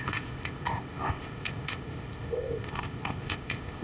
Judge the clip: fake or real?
fake